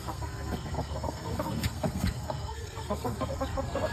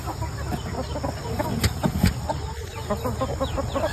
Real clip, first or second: second